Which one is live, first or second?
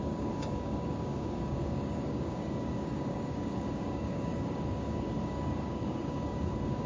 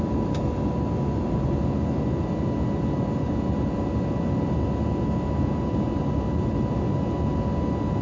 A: second